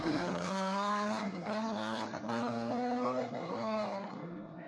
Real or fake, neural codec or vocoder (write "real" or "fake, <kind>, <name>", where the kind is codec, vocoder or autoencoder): fake, codec, SNAC